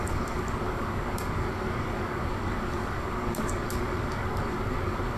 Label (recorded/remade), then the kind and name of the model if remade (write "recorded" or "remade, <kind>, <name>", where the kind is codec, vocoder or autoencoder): remade, codec, DAC